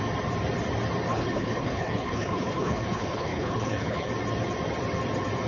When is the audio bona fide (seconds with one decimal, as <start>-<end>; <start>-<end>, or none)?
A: 0.0-1.1; 4.1-5.5